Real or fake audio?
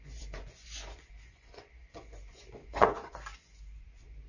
fake